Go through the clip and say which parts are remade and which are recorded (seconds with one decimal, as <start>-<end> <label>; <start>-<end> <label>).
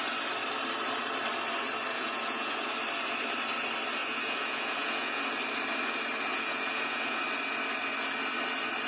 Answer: 0.0-1.9 recorded; 1.9-2.7 remade; 2.7-4.0 recorded; 4.0-5.2 remade; 5.2-6.3 recorded; 6.3-7.2 remade; 7.2-8.9 recorded